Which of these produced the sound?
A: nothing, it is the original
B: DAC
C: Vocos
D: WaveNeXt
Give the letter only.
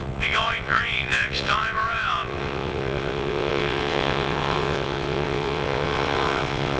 D